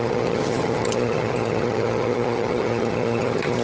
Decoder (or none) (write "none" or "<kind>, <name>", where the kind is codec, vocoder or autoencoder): vocoder, HiFi-GAN